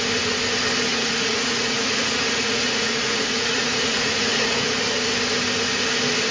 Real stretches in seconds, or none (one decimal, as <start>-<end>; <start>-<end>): 0.0-0.9; 4.7-6.3